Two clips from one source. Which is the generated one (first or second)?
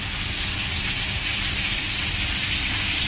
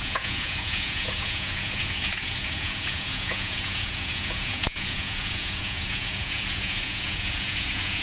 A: second